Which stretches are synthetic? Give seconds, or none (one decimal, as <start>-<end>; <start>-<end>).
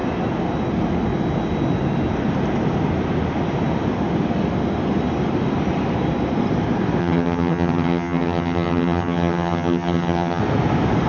7.0-10.4